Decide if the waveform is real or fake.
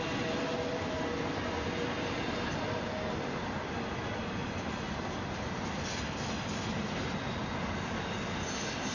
real